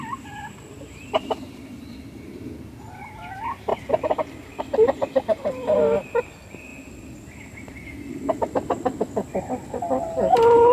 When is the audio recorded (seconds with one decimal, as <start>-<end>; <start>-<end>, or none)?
0.0-10.7

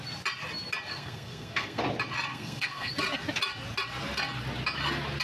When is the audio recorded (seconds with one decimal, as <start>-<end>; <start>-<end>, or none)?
0.0-0.9; 1.8-2.3; 2.9-5.2